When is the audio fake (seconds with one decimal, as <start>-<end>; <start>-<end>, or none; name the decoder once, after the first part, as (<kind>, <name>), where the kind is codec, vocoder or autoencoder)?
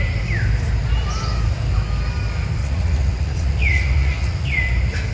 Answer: 2.6-4.6 (vocoder, Vocos)